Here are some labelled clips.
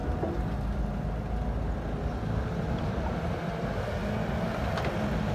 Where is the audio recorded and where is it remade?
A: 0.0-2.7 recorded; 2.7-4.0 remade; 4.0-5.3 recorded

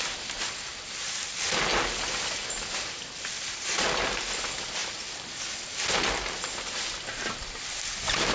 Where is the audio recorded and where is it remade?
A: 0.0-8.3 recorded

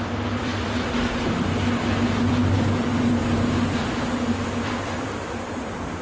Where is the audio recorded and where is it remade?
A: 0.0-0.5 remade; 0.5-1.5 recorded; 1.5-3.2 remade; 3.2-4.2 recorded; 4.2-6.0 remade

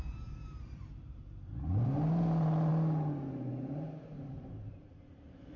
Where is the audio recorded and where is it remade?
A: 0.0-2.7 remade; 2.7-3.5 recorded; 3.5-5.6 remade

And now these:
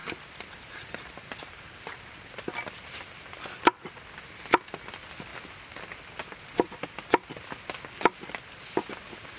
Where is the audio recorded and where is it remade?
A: 0.0-2.0 remade; 2.0-9.4 recorded